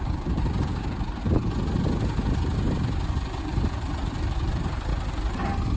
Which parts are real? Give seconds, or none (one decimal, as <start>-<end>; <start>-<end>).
1.2-3.4; 4.9-5.8